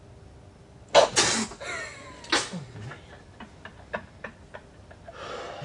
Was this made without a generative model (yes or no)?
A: yes